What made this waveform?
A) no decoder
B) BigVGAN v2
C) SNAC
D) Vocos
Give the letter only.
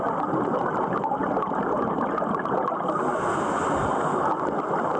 A